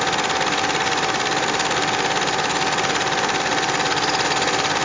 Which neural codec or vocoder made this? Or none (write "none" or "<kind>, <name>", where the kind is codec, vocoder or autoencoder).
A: none